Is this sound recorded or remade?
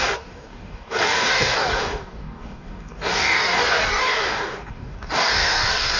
remade